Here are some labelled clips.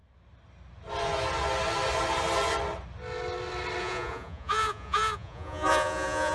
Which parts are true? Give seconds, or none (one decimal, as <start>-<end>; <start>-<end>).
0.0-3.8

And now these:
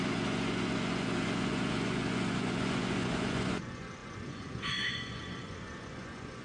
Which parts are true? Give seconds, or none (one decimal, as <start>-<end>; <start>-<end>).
none

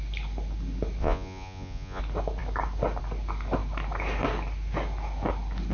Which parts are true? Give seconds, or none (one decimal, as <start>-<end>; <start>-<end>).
0.0-1.0; 2.0-5.7

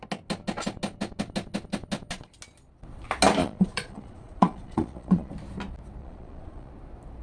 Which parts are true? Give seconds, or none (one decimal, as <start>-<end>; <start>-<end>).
0.0-3.4; 5.3-6.0; 6.7-7.2